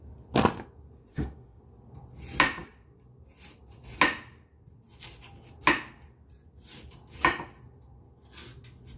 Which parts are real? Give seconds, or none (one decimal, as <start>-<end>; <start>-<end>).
0.0-1.1; 1.6-9.0